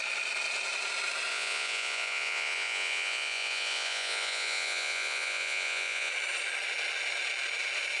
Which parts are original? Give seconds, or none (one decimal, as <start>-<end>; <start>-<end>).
0.0-1.3; 6.1-8.0